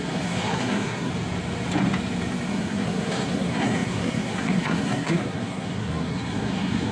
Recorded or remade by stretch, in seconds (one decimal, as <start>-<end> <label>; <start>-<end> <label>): 0.0-1.1 remade; 1.1-2.5 recorded; 2.5-6.9 remade